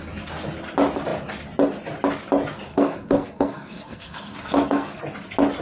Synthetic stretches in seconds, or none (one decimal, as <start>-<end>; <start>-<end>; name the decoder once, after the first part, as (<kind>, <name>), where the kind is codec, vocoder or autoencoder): 2.7-5.0 (codec, SNAC)